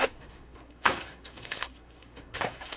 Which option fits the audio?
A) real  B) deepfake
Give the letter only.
B